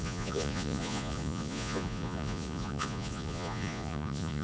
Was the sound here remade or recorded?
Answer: remade